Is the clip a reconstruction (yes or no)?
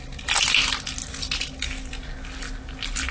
no